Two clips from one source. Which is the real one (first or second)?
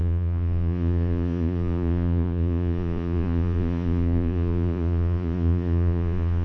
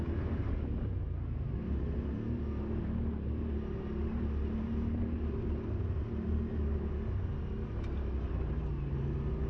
second